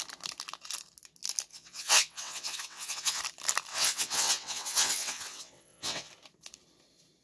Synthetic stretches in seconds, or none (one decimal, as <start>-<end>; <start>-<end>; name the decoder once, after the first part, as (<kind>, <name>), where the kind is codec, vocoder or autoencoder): 1.5-3.2 (vocoder, WaveNeXt); 3.7-6.1

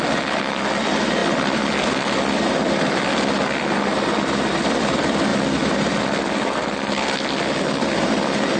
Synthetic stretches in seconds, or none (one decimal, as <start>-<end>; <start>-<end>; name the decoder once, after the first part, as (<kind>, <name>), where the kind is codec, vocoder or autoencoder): none